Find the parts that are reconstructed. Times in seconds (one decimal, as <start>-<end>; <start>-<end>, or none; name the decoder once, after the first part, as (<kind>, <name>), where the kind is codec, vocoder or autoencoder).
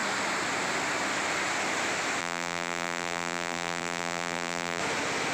2.2-4.8 (vocoder, BigVGAN v2)